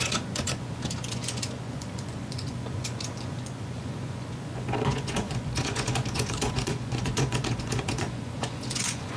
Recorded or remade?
remade